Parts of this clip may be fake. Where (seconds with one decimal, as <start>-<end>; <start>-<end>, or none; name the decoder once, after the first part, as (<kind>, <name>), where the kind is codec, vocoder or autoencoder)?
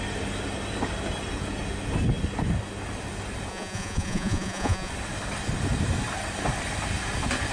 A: 3.5-4.9 (vocoder, Vocos)